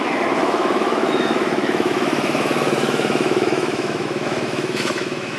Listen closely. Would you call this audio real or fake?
fake